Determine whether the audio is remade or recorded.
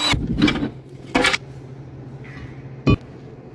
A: recorded